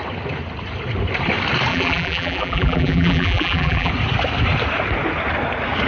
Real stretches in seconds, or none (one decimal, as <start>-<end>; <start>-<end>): 0.0-1.7; 3.9-5.9